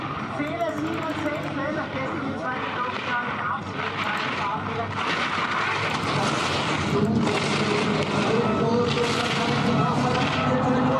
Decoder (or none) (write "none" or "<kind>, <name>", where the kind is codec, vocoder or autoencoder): none